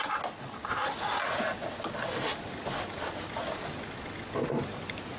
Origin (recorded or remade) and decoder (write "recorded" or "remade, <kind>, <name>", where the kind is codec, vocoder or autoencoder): recorded